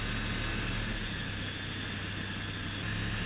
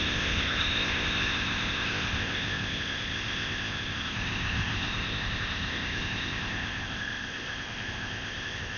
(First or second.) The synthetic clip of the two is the second